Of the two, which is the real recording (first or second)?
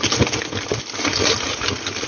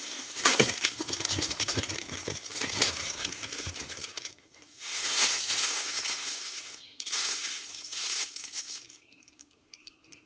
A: first